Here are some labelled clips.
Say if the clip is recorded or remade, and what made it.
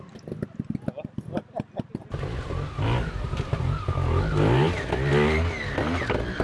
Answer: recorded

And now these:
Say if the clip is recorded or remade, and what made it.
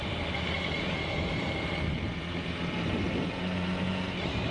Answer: remade, vocoder, BigVGAN v2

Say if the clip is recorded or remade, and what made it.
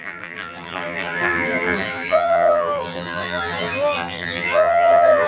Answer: remade, vocoder, BigVGAN v2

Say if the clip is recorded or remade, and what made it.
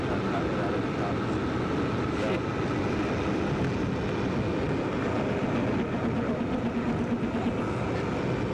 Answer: recorded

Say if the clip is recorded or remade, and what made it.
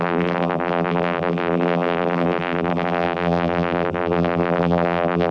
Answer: remade, vocoder, BigVGAN v2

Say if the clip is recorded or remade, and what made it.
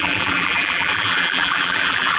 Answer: remade, vocoder, BigVGAN v2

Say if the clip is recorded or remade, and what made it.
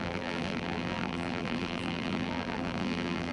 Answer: remade, vocoder, BigVGAN v2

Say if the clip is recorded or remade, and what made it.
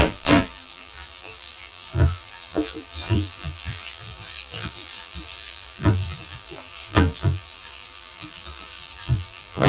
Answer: remade, vocoder, BigVGAN v2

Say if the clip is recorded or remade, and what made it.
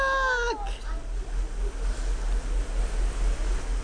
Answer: recorded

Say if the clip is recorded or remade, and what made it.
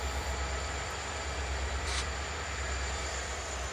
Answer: remade, vocoder, BigVGAN v2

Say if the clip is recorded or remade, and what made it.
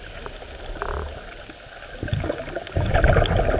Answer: recorded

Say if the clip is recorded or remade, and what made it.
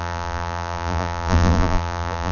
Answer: remade, vocoder, BigVGAN v2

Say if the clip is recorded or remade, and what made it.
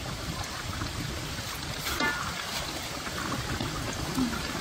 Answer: recorded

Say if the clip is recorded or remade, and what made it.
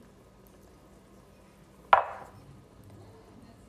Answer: recorded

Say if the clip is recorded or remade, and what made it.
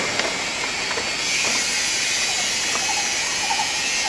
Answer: recorded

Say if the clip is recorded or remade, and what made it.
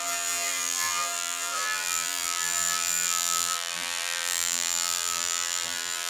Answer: remade, vocoder, BigVGAN v2